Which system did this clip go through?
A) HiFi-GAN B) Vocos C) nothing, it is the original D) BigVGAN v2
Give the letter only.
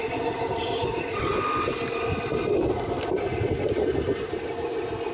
C